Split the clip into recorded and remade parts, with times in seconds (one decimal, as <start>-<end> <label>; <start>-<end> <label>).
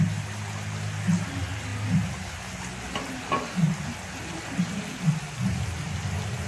0.0-6.5 recorded